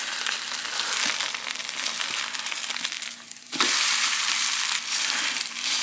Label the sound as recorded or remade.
remade